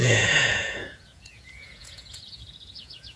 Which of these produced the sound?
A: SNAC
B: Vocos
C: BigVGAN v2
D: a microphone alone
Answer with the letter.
B